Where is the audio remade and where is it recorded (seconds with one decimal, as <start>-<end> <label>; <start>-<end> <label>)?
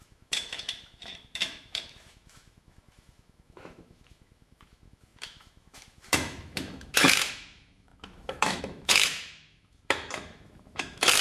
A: 0.0-11.2 remade